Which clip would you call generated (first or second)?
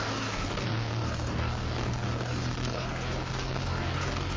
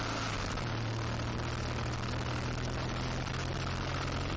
first